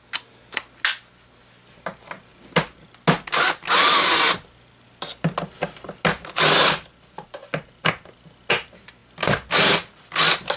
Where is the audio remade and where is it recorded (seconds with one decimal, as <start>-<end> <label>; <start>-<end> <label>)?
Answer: 0.0-10.6 recorded